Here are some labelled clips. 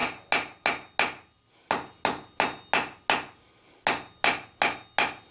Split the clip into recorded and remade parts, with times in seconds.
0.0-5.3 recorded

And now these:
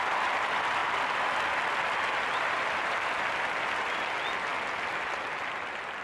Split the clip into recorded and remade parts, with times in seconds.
0.0-6.0 recorded